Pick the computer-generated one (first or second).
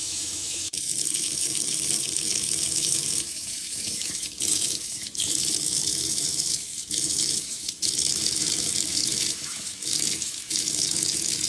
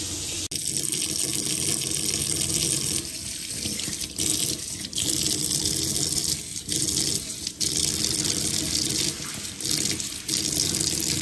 first